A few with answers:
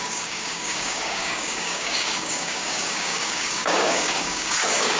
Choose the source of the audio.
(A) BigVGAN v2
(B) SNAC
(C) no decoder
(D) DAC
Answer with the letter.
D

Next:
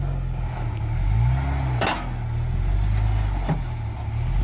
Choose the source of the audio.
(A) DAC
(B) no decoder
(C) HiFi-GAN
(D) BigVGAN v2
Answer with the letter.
B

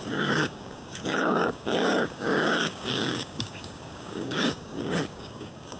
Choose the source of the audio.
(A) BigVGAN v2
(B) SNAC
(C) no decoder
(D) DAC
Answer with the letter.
D